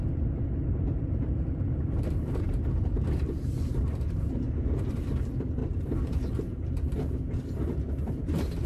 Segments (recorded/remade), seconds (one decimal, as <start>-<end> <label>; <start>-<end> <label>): 0.0-5.6 remade; 5.6-6.4 recorded; 6.4-8.7 remade